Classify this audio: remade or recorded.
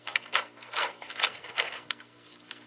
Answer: remade